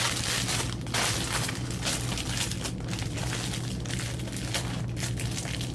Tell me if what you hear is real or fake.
real